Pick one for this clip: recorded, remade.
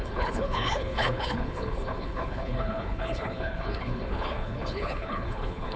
remade